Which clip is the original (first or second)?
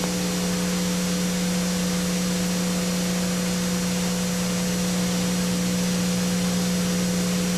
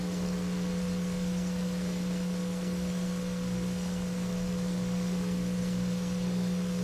first